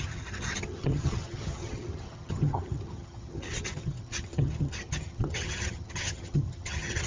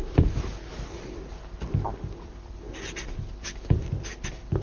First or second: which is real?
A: second